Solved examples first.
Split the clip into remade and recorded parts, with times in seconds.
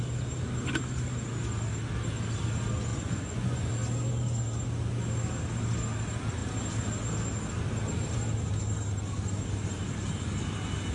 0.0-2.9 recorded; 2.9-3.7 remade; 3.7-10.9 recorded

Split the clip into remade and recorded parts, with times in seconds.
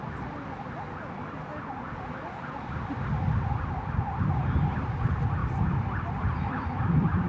0.0-5.4 recorded; 5.4-6.8 remade; 6.8-7.3 recorded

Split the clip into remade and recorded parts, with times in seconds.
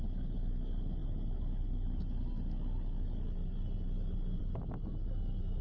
0.0-5.6 recorded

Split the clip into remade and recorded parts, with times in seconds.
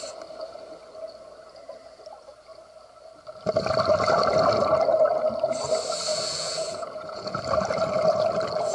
0.0-6.1 recorded; 6.1-7.4 remade; 7.4-8.7 recorded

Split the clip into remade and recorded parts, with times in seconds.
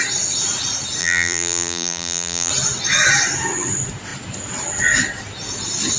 0.0-1.0 recorded; 1.0-2.5 remade; 2.5-6.0 recorded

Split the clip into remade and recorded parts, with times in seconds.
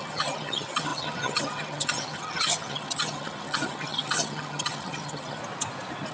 0.0-5.4 remade; 5.4-6.1 recorded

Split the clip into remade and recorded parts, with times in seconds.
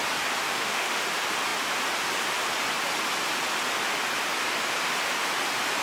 0.0-0.4 recorded; 0.4-1.0 remade; 1.0-5.8 recorded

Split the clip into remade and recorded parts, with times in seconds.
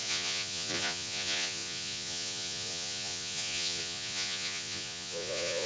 0.0-5.7 remade